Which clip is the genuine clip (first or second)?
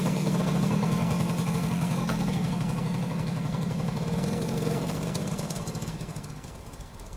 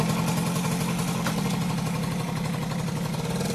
second